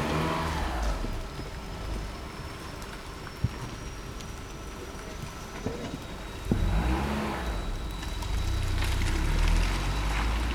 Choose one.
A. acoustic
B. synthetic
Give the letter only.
A